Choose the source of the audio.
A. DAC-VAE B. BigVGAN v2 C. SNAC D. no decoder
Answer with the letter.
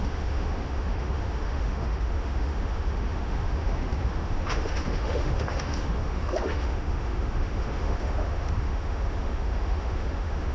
A